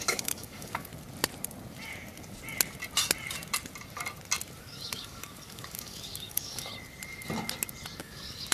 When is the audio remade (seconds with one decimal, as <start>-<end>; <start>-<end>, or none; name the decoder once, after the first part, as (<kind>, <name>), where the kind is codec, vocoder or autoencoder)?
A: 0.0-0.9 (codec, DAC); 4.6-6.7; 8.0-8.5